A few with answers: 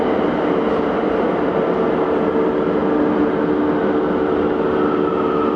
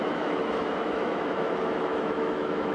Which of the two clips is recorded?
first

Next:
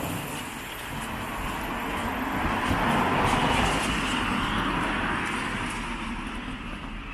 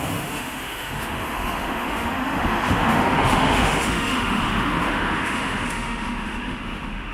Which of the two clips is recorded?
first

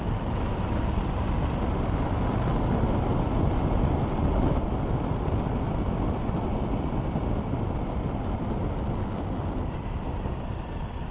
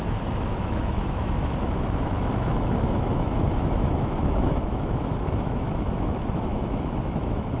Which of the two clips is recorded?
first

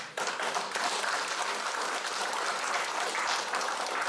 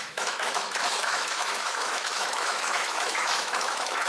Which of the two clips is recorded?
first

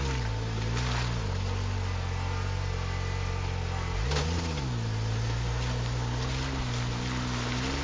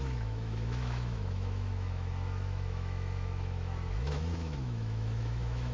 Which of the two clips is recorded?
first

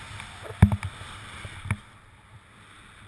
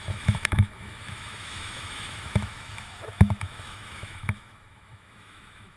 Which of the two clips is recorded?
first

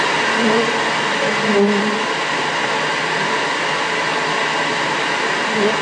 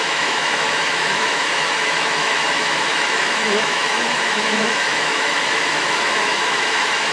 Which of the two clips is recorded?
first